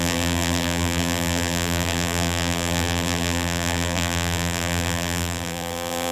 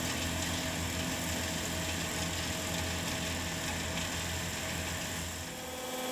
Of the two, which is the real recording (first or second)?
second